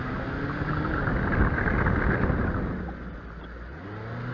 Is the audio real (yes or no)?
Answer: yes